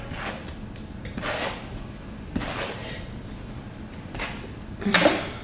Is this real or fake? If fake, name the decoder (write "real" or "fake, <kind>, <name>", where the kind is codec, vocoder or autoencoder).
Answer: fake, vocoder, BigVGAN v2